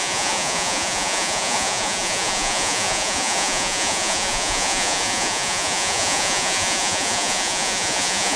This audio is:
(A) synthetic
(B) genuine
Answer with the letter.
A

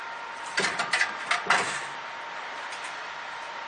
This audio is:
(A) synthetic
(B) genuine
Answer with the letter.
A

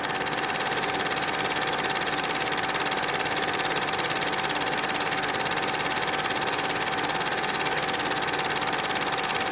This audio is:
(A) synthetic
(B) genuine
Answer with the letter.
B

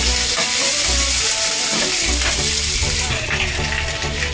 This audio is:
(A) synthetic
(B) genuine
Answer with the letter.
B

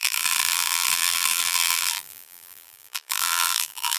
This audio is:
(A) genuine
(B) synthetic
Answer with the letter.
B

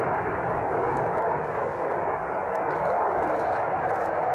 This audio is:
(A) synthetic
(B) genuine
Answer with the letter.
A